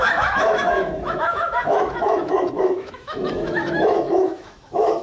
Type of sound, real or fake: fake